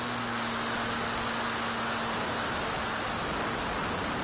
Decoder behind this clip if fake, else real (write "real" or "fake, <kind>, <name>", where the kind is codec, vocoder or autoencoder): real